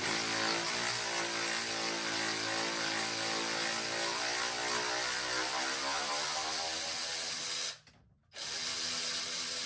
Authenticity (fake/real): real